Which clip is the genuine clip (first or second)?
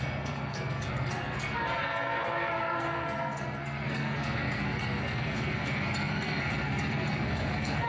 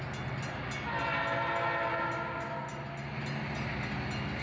second